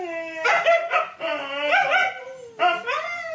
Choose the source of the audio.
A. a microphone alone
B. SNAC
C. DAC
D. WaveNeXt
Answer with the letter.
A